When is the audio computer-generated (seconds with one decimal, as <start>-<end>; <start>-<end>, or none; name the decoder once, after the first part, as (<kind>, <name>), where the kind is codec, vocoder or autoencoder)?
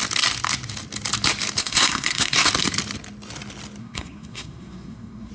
1.6-2.5 (codec, SNAC); 3.8-5.3